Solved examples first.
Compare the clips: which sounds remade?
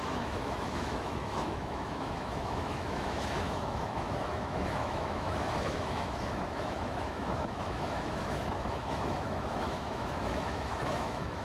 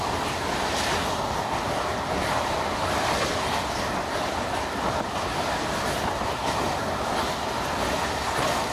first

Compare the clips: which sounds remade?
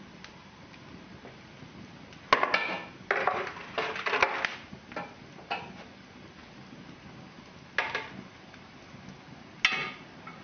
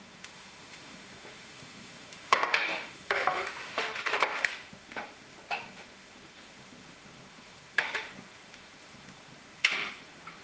second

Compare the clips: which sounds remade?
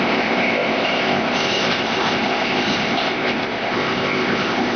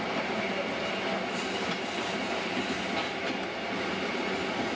first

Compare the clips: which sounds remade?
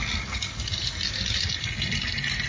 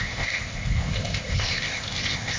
second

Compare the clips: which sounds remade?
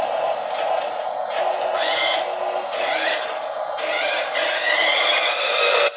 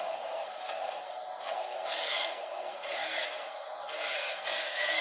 second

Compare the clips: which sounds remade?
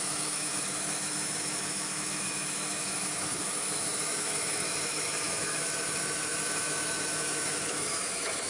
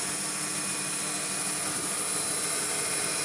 first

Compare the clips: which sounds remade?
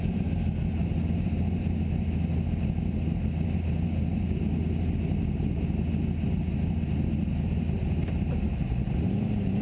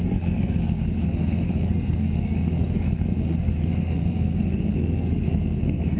second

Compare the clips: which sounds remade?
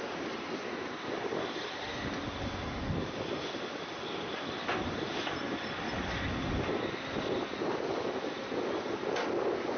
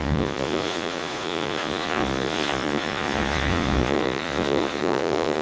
second